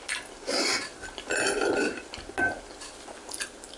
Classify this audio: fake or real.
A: real